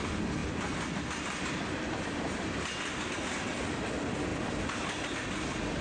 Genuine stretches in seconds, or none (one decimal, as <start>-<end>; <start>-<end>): 0.0-5.8